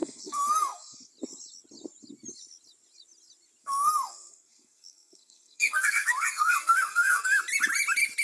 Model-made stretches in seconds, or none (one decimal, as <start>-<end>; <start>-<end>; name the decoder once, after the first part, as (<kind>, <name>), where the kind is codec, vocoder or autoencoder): 0.0-1.1 (codec, SNAC); 3.6-7.4